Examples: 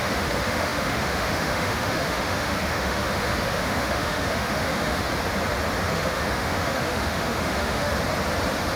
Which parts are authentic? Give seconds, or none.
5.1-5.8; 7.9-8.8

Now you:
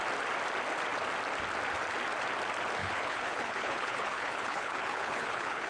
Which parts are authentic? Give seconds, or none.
0.0-2.8

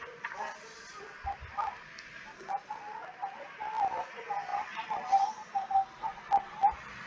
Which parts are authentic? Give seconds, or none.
0.0-7.1

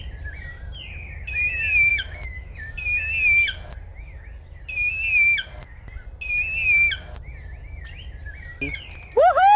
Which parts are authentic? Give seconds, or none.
0.0-1.9; 2.5-9.6

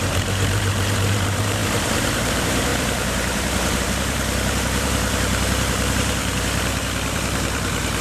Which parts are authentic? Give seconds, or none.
none